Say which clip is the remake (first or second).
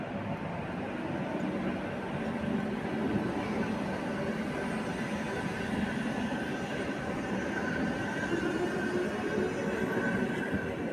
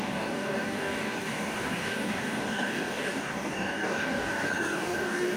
second